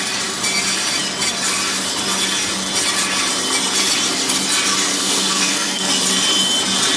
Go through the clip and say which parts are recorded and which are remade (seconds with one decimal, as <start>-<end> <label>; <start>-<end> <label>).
0.0-4.9 recorded; 4.9-5.9 remade; 5.9-7.0 recorded

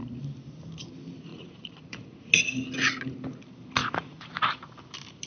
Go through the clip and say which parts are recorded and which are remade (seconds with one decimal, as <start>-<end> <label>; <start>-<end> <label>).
0.0-1.3 recorded; 1.3-2.3 remade; 2.3-3.8 recorded; 3.8-4.5 remade; 4.5-5.3 recorded

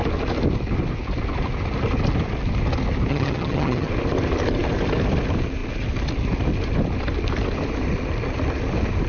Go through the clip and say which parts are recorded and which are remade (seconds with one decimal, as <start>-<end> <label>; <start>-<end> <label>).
0.0-3.1 recorded; 3.1-3.9 remade; 3.9-9.1 recorded

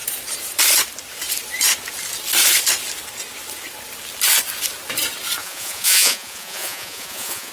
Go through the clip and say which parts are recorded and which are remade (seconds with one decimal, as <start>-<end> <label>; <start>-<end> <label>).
0.0-5.4 recorded; 5.4-7.5 remade

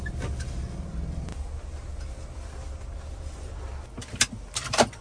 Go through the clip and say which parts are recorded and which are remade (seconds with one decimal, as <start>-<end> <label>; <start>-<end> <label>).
0.0-5.0 recorded